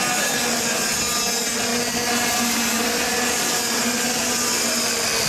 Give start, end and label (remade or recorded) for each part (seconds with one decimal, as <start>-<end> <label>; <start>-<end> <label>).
0.0-5.3 recorded